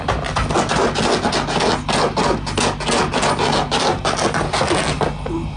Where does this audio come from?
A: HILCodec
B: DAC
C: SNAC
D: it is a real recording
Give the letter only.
D